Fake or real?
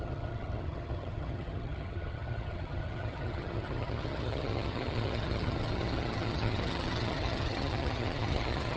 fake